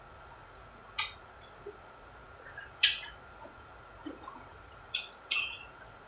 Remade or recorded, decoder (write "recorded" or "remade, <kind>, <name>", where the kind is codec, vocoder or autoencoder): remade, vocoder, Vocos